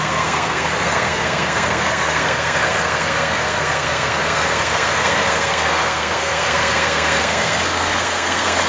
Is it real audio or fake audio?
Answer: fake